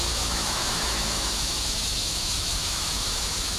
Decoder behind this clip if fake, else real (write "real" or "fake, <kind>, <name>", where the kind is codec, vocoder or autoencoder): fake, autoencoder, DAC-VAE